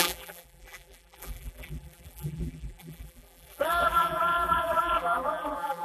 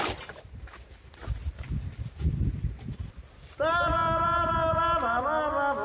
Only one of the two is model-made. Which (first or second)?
first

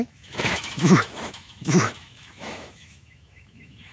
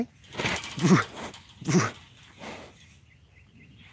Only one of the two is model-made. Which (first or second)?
first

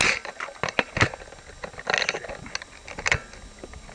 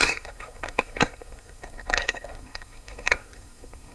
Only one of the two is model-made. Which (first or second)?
second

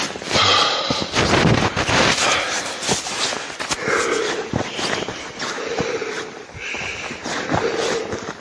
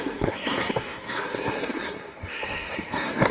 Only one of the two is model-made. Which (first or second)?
second